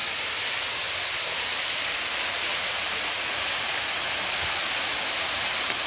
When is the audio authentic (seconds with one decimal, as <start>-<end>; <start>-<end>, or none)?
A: 0.0-4.9